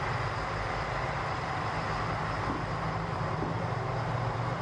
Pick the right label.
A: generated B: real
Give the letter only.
A